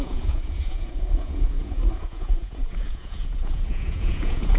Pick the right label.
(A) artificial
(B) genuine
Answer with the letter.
A